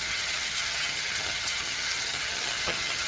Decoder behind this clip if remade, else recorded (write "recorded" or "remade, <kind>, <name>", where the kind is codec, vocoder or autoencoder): remade, vocoder, HiFi-GAN